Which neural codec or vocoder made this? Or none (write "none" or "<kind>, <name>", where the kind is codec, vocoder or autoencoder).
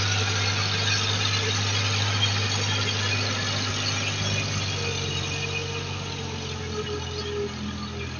none